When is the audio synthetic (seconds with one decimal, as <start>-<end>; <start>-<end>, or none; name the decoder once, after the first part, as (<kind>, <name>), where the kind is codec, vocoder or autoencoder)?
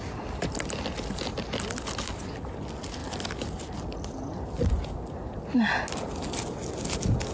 none